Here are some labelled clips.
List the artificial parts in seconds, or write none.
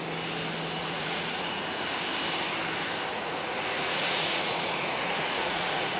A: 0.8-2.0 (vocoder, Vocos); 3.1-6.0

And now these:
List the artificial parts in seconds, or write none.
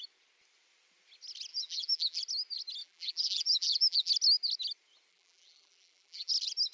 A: 1.5-2.2 (vocoder, BigVGAN v2); 2.8-4.1; 5.1-6.3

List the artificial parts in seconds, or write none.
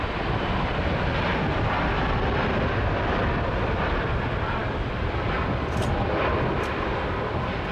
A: none